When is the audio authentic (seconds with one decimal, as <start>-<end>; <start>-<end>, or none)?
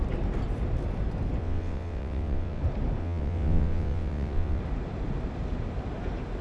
0.0-1.4; 2.6-3.0; 4.6-6.4